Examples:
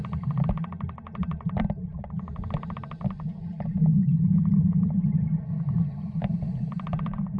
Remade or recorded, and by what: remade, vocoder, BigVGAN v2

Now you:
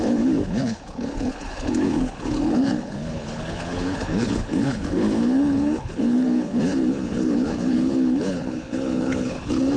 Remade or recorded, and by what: remade, codec, HILCodec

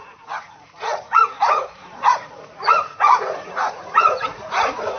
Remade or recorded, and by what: remade, vocoder, Vocos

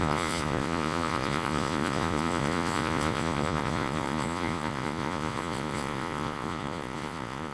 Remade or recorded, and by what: remade, vocoder, Vocos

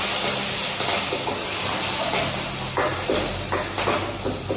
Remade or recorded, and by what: recorded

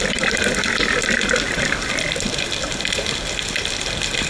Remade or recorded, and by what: recorded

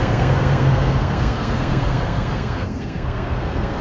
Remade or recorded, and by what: remade, codec, SNAC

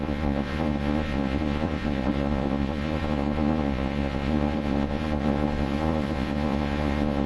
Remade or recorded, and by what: remade, vocoder, Vocos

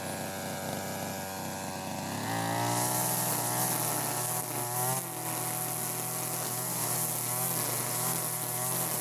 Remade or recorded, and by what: recorded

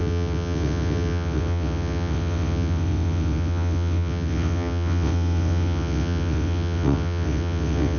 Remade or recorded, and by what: remade, vocoder, WaveNeXt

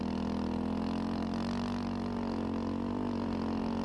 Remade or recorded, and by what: recorded